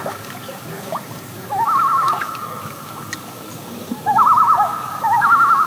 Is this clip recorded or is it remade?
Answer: remade